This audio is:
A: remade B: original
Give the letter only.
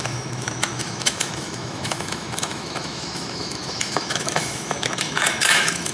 A